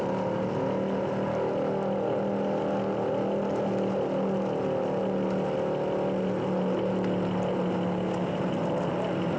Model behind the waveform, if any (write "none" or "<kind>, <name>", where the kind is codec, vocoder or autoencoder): none